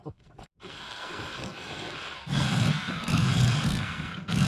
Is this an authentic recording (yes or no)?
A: no